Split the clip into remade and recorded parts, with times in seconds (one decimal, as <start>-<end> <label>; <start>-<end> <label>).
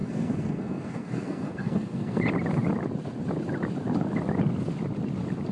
0.0-2.2 remade; 2.2-5.5 recorded